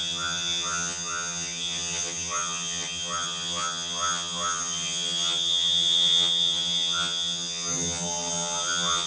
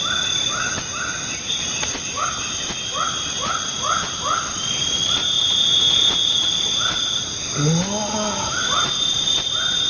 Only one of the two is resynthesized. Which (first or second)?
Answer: first